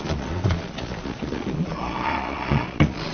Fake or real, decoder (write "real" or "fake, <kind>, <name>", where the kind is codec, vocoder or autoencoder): fake, vocoder, Vocos